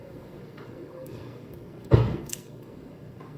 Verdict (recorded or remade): remade